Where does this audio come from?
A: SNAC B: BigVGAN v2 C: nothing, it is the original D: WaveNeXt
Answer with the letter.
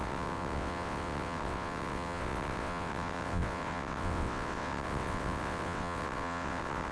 D